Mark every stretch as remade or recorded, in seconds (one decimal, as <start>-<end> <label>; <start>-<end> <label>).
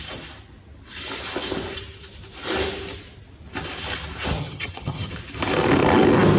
0.0-4.4 recorded; 4.4-5.1 remade; 5.1-6.4 recorded